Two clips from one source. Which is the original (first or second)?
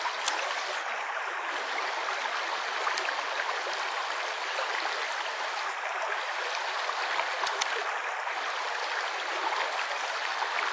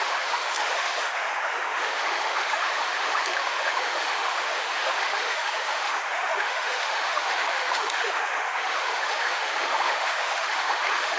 first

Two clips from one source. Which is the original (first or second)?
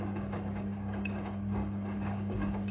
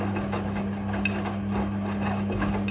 second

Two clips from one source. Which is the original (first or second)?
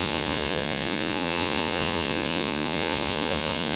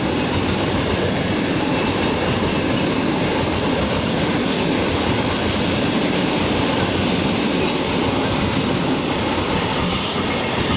second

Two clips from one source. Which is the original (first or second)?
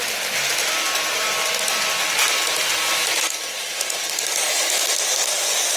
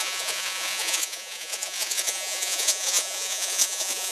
first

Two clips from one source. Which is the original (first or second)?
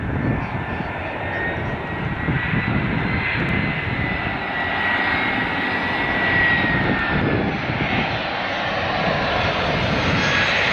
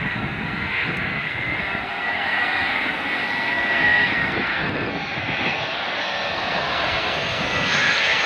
first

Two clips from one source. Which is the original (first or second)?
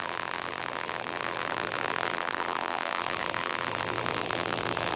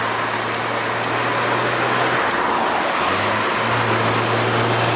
second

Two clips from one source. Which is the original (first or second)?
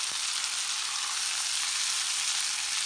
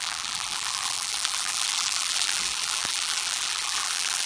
first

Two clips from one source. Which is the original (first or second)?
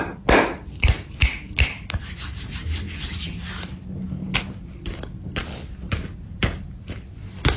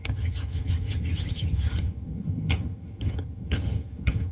first